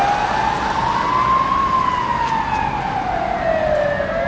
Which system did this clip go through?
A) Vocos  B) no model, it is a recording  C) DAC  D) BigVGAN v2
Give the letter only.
B